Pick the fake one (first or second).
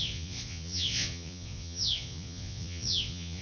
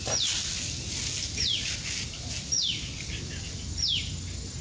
first